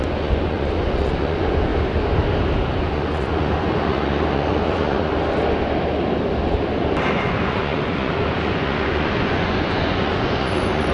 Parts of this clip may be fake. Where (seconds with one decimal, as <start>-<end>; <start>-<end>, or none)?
0.0-1.7; 2.8-5.1; 7.1-10.9